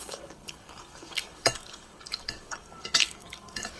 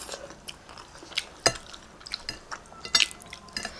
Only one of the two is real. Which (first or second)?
second